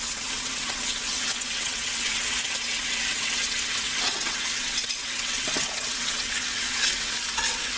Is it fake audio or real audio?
fake